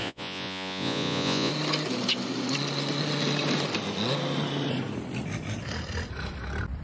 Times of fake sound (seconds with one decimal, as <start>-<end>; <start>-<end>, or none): 0.0-1.5